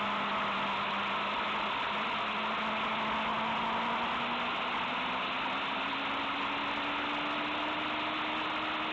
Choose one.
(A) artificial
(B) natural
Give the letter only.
B